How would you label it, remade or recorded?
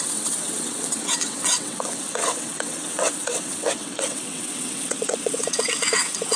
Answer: remade